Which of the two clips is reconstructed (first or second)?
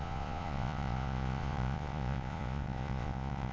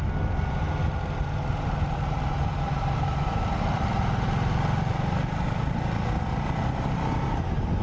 first